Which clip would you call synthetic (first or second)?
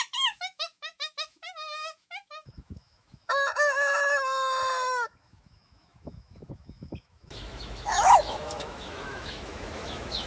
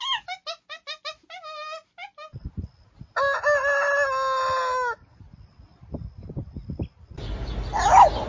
first